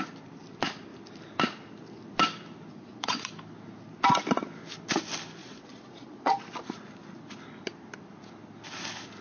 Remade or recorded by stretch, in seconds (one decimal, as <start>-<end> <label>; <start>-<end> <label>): 0.0-2.7 recorded; 2.7-3.3 remade; 3.3-5.4 recorded; 5.4-6.4 remade; 6.4-9.2 recorded